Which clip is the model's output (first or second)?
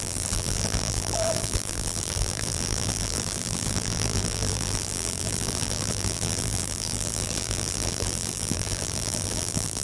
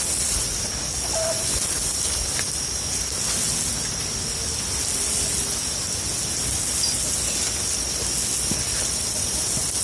first